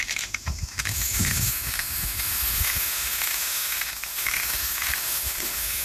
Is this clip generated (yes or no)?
yes